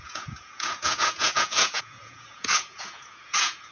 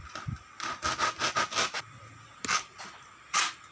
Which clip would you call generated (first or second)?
first